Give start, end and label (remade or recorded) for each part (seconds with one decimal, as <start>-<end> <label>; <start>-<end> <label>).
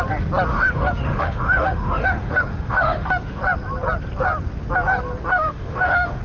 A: 0.0-0.5 recorded; 0.5-3.4 remade; 3.4-5.3 recorded; 5.3-6.2 remade